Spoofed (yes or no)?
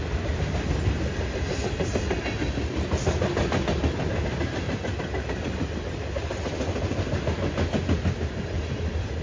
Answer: no